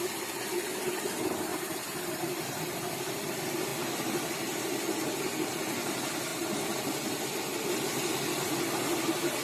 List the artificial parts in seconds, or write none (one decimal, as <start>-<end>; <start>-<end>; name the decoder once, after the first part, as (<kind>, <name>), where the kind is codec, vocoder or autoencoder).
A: 1.5-3.3 (vocoder, BigVGAN v2); 3.7-4.6; 6.3-7.2